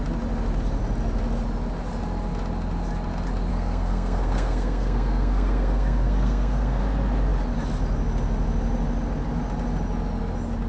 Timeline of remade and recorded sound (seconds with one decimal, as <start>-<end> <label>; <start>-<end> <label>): 0.0-3.5 recorded; 3.5-6.8 remade; 6.8-10.7 recorded